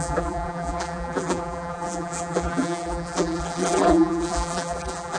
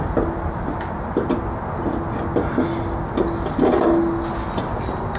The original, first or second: second